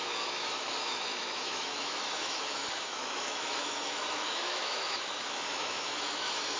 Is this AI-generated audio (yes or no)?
yes